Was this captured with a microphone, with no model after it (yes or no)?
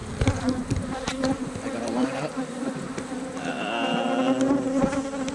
yes